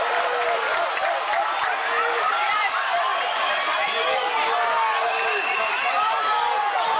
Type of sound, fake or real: real